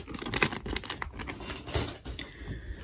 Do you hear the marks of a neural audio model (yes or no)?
no